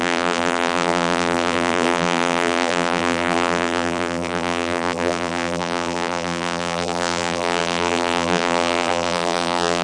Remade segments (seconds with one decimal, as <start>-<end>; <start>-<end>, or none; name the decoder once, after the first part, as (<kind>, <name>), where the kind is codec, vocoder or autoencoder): 0.0-9.8 (vocoder, BigVGAN v2)